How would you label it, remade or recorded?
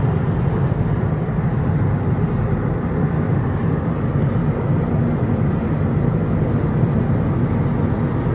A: recorded